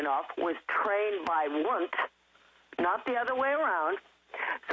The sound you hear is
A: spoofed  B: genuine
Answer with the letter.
B